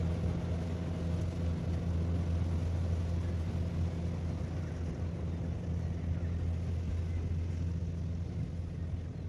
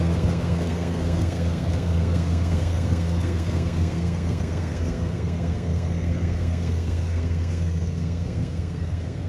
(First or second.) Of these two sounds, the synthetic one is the second